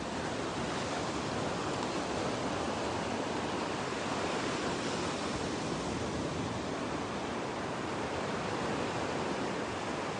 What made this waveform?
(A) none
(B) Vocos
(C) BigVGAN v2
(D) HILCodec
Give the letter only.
A